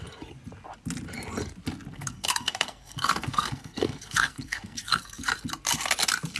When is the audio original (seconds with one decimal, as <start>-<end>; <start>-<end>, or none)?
0.0-1.9; 5.3-6.4